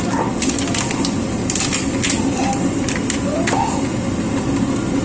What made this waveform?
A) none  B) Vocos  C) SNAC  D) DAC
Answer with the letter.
A